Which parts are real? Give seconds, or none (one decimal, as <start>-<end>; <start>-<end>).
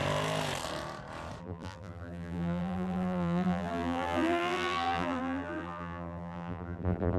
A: 0.0-1.4